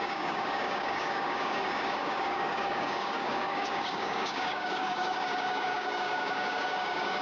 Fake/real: fake